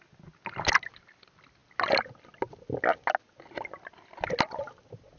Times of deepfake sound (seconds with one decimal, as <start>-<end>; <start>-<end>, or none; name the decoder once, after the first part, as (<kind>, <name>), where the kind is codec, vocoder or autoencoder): none